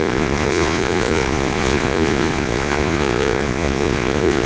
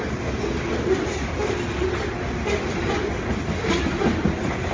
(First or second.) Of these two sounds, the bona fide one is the second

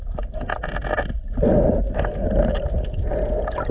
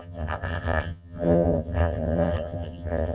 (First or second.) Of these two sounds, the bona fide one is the first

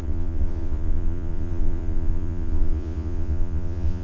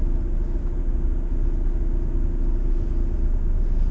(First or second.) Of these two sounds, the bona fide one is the second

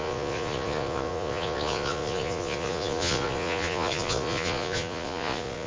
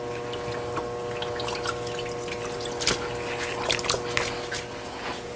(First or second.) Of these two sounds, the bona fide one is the second